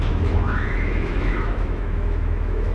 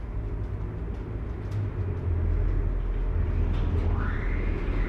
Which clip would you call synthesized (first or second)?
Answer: first